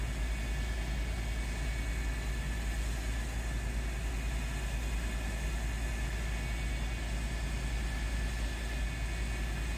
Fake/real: real